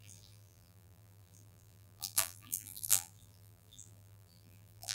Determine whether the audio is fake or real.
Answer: fake